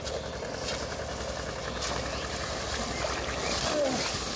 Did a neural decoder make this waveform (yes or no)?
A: no